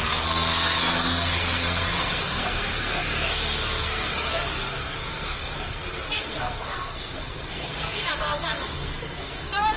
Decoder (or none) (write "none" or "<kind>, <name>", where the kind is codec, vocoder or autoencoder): codec, SNAC